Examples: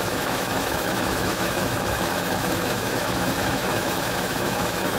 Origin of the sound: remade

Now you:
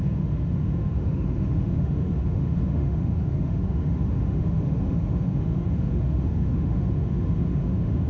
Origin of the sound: remade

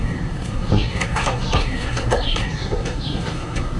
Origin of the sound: remade